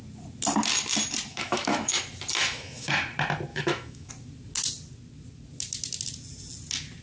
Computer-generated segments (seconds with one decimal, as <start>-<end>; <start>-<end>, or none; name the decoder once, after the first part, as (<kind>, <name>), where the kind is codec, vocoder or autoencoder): 1.3-2.0 (autoencoder, DAC-VAE); 2.4-3.0; 3.5-4.1